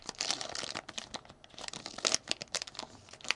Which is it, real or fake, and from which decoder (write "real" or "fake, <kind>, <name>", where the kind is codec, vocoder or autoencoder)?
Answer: real